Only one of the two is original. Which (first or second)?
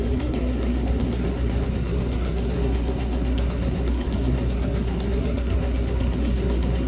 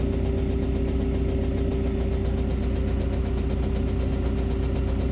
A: second